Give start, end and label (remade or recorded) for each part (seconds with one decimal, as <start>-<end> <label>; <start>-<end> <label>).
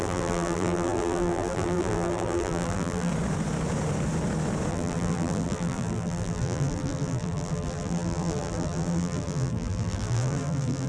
0.0-3.1 remade; 3.1-4.7 recorded; 4.7-10.9 remade